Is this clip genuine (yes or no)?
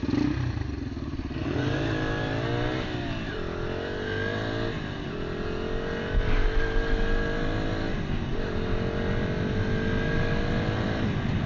yes